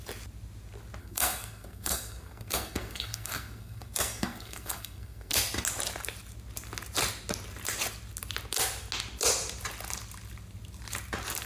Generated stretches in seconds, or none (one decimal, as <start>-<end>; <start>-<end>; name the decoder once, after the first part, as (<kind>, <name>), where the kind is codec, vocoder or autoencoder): 1.0-5.3 (codec, SNAC)